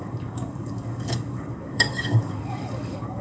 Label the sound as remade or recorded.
remade